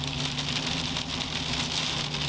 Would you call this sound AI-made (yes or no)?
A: no